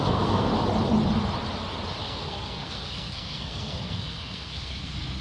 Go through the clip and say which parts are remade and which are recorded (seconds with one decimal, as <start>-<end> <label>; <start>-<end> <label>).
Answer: 0.0-0.5 remade; 0.5-2.0 recorded; 2.0-5.2 remade